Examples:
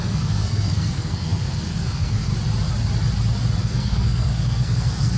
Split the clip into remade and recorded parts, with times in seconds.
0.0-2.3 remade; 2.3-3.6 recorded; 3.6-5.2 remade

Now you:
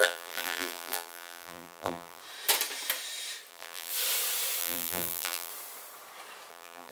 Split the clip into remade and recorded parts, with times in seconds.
0.0-2.2 remade; 2.2-3.5 recorded; 3.5-3.9 remade; 3.9-4.6 recorded; 4.6-5.5 remade; 5.5-6.5 recorded; 6.5-6.9 remade

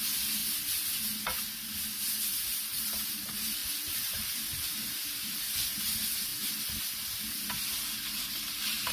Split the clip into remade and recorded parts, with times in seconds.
0.0-0.4 remade; 0.4-2.3 recorded; 2.3-6.3 remade; 6.3-8.1 recorded; 8.1-8.9 remade

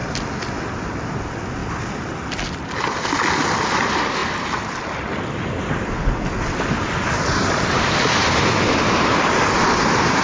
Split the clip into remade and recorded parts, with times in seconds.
0.0-10.2 recorded

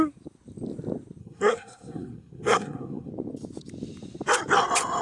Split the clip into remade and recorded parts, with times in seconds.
0.0-1.2 recorded; 1.2-3.1 remade; 3.1-5.0 recorded